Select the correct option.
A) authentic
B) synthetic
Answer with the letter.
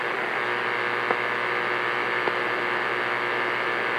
A